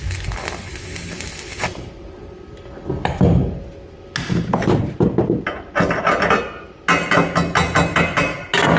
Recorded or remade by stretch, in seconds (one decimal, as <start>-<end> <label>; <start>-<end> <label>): 0.0-8.8 recorded